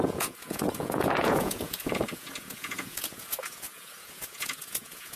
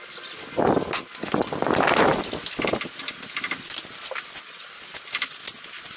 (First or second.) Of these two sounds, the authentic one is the second